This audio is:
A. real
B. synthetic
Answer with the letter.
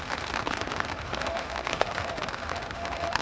B